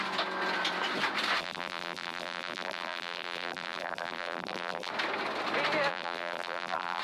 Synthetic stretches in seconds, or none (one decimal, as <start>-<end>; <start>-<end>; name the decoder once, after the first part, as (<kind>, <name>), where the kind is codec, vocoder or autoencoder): 1.4-4.9 (vocoder, BigVGAN v2); 5.9-7.0